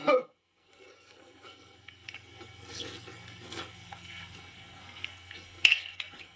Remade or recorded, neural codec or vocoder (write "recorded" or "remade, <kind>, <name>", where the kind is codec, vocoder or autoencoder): remade, codec, SNAC